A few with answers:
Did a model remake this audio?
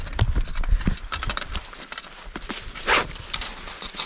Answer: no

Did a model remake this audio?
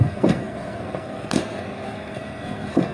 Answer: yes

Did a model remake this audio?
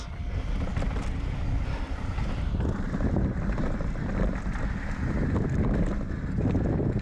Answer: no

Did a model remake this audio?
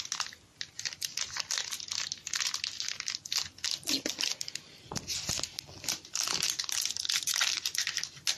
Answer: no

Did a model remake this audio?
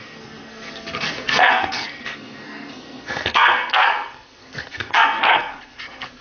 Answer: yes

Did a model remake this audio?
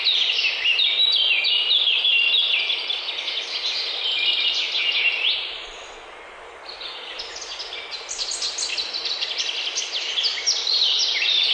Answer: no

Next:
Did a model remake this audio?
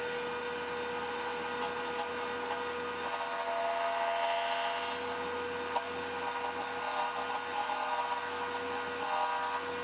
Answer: no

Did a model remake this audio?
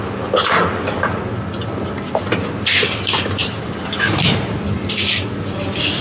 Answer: no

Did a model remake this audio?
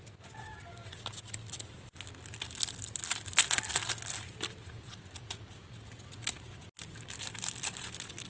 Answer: no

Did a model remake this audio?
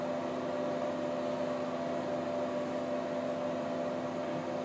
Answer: no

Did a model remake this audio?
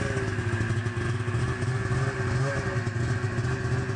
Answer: no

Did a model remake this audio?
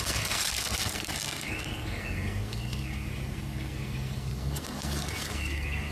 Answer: yes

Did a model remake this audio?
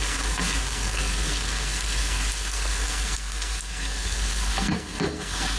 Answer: yes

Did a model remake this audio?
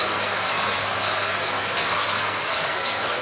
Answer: yes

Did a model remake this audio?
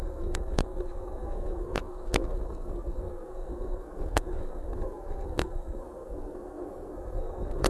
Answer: yes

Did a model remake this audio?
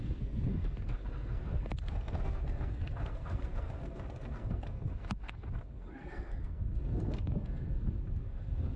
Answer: yes